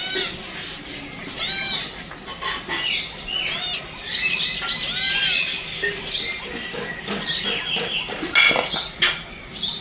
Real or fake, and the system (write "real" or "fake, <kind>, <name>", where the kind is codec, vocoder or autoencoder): real